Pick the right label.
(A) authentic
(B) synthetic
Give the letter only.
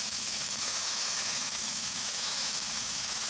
B